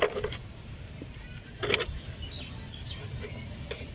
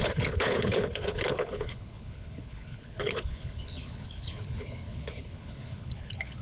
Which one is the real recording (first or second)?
first